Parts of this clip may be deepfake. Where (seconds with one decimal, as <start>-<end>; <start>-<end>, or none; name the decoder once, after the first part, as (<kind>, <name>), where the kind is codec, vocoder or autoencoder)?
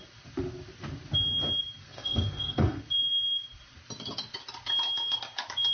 1.8-2.8 (codec, SNAC)